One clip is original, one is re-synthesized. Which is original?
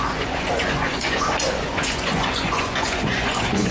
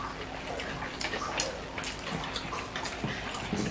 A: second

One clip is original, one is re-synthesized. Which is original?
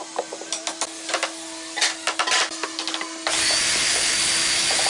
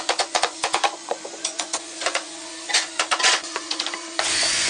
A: first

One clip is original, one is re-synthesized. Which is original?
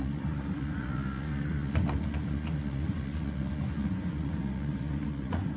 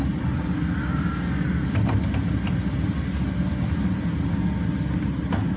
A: second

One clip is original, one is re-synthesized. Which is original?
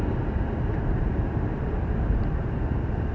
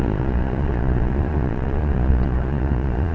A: first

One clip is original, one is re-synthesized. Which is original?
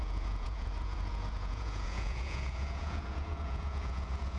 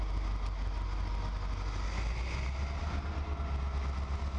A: second